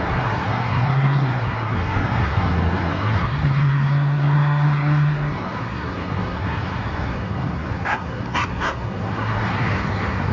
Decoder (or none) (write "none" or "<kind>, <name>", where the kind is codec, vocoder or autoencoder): codec, SNAC